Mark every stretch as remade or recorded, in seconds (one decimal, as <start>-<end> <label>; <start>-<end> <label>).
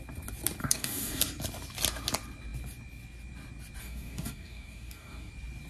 0.0-0.6 recorded; 0.6-1.2 remade; 1.2-3.8 recorded; 3.8-5.3 remade; 5.3-5.7 recorded